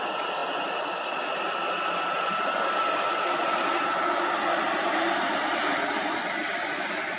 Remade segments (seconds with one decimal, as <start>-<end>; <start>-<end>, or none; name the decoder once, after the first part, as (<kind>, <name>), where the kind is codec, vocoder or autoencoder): none